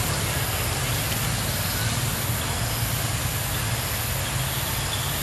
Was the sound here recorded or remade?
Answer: recorded